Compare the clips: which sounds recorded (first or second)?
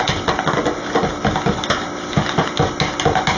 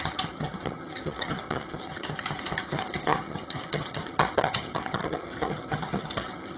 first